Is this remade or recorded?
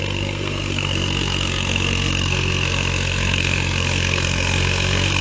remade